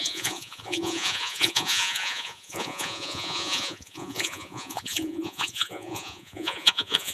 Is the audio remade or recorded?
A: remade